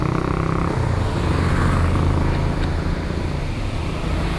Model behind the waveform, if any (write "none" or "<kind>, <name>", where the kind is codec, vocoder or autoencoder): none